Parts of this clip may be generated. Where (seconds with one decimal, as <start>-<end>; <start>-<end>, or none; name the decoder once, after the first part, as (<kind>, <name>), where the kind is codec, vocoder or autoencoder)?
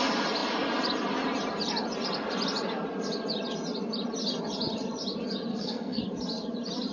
5.5-6.0 (codec, SNAC)